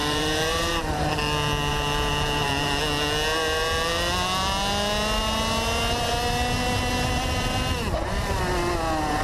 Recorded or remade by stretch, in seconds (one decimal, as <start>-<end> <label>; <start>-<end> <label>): 0.0-1.2 remade; 1.2-1.7 recorded; 1.7-2.8 remade; 2.8-9.2 recorded